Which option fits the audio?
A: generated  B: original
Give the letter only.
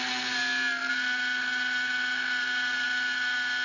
B